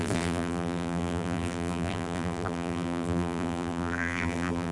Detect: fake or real fake